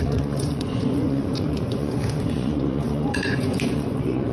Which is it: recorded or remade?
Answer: remade